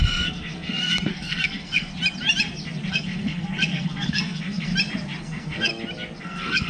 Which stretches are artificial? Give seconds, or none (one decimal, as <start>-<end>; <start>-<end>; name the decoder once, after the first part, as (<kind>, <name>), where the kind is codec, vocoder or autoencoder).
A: 0.0-1.9 (codec, SNAC); 2.9-4.7; 5.2-5.7; 6.2-6.7